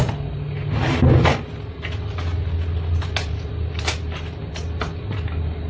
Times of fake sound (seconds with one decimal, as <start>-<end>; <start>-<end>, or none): none